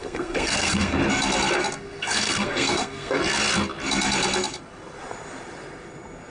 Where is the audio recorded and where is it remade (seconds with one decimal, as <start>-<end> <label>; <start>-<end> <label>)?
0.0-1.0 remade; 1.0-1.7 recorded; 1.7-3.2 remade; 3.2-6.3 recorded